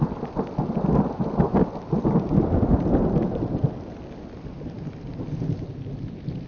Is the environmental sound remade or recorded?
recorded